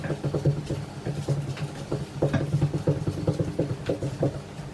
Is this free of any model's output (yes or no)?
yes